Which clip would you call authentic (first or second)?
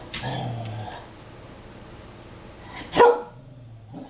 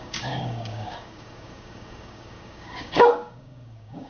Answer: first